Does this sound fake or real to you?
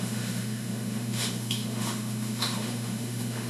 fake